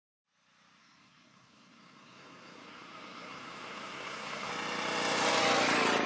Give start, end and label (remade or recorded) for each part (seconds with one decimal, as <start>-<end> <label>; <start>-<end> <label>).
0.0-0.8 recorded; 0.8-4.5 remade; 4.5-6.1 recorded